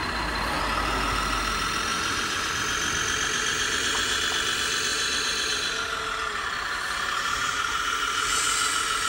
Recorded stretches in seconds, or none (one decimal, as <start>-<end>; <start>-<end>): 0.6-1.9; 2.5-3.5; 4.2-4.9; 7.8-9.1

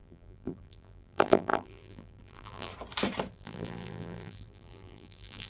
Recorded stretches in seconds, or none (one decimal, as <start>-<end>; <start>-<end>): 2.7-3.3

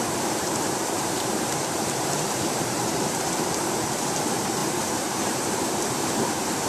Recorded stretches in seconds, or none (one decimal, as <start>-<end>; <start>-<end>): none

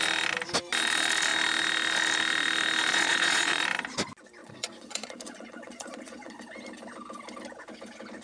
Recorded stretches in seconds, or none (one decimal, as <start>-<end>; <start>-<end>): 0.0-2.9; 3.6-4.4; 6.4-8.2

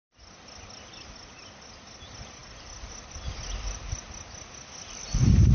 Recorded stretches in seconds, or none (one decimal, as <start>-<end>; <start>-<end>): 0.0-2.4; 4.0-5.5

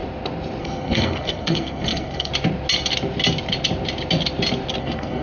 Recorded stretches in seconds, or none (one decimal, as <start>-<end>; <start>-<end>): 0.0-0.6; 2.3-4.8

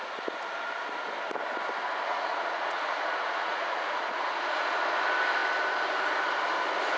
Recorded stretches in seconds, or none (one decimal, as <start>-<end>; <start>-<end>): 0.0-2.1; 4.8-7.0

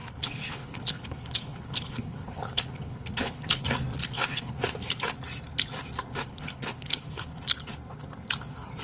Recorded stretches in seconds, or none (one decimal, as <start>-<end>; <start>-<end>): 3.6-4.0; 4.9-6.2; 7.4-8.8